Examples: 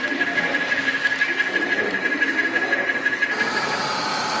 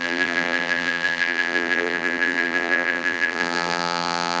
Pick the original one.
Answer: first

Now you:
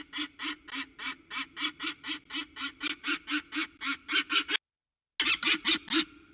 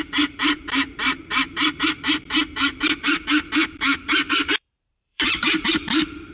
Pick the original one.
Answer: first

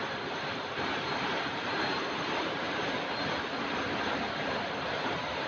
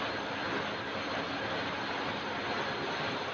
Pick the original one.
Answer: second